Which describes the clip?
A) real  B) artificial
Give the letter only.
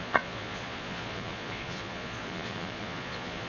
B